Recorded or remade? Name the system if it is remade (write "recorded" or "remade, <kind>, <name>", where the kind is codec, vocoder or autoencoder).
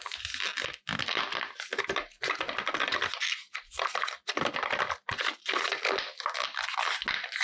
recorded